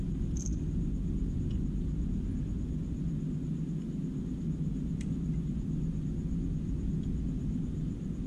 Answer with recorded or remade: recorded